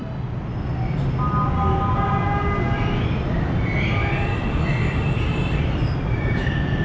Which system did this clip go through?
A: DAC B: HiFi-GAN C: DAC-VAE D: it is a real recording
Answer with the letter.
D